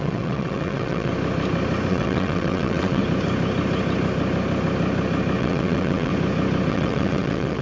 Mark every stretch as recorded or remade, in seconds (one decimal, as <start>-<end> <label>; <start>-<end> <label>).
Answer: 0.0-1.1 remade; 1.1-1.9 recorded; 1.9-3.0 remade; 3.0-5.4 recorded; 5.4-6.1 remade; 6.1-6.7 recorded; 6.7-7.6 remade